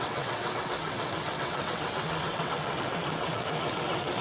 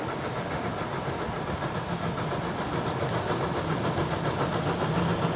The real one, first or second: second